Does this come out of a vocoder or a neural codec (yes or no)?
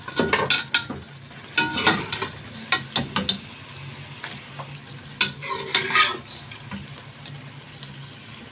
no